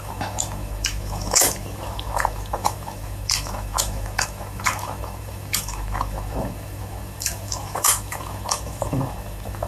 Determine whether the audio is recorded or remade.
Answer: remade